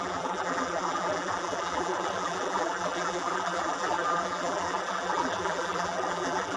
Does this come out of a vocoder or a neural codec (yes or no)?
yes